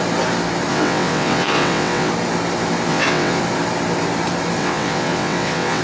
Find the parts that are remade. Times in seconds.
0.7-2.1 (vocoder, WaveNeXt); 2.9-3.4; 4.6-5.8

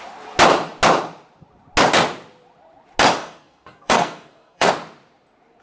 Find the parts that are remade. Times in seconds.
3.2-4.7 (codec, SNAC)

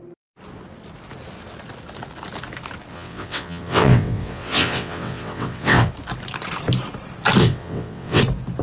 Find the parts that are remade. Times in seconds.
2.9-5.9 (vocoder, WaveNeXt); 7.4-8.2

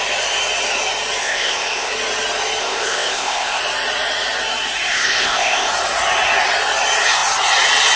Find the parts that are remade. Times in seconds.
1.2-1.9 (codec, ZipCodec); 2.6-3.6; 4.9-5.7

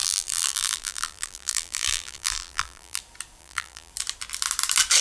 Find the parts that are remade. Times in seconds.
0.0-3.0 (vocoder, BigVGAN v2); 3.4-3.9